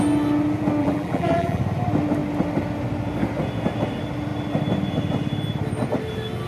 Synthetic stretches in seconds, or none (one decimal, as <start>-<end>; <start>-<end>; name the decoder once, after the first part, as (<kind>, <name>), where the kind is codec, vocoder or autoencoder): 0.8-1.6 (vocoder, BigVGAN v2)